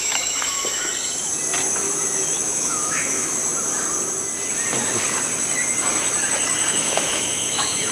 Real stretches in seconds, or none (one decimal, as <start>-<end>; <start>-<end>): 0.9-1.8; 3.4-6.7